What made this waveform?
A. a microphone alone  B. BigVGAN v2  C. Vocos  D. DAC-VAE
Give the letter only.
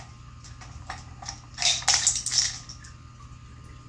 A